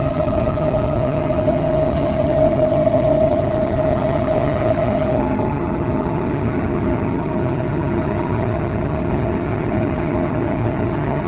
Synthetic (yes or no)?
yes